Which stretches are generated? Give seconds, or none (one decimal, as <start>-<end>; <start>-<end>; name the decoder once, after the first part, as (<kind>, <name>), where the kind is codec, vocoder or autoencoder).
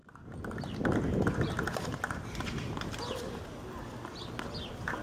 none